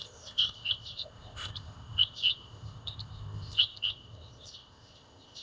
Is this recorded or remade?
remade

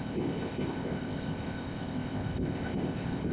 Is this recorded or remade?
remade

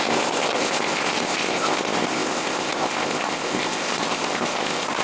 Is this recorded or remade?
remade